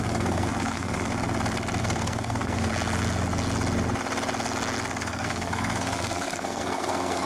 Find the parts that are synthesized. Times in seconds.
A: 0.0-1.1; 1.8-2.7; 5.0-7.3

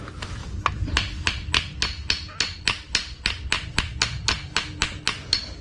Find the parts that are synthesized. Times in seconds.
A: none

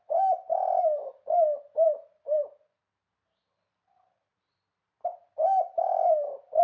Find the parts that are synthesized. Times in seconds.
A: 0.0-0.5; 1.9-2.4; 3.1-6.6

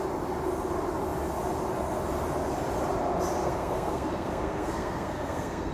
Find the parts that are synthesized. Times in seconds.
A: 3.4-5.7